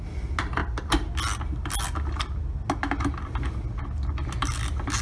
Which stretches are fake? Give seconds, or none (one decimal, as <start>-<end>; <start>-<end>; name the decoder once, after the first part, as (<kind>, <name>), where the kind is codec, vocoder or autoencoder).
none